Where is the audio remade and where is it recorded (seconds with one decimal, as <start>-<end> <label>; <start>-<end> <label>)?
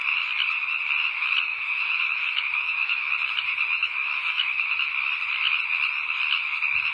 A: 0.0-1.5 recorded; 1.5-3.1 remade; 3.1-3.8 recorded; 3.8-4.7 remade; 4.7-6.9 recorded